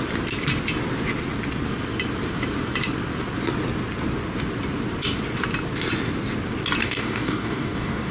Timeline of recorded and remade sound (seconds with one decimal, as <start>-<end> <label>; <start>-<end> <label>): 0.0-6.8 recorded; 6.8-8.1 remade